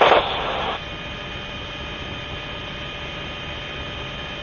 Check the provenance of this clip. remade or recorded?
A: recorded